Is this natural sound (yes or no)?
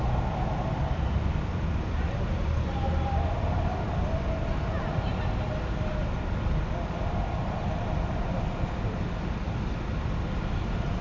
yes